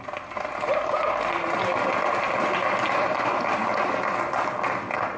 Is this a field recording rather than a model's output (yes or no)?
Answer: yes